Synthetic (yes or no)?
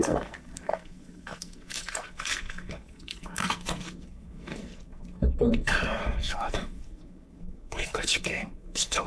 yes